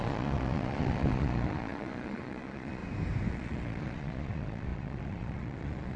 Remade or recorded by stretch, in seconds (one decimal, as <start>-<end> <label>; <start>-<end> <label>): 0.0-2.8 remade; 2.8-3.3 recorded; 3.3-6.0 remade